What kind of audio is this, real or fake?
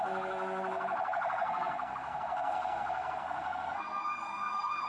fake